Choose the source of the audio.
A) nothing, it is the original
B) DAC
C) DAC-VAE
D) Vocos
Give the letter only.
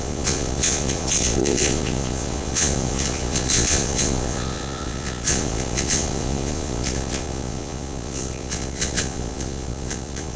D